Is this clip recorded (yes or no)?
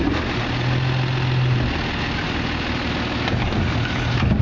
yes